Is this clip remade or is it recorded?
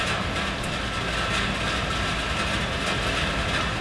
recorded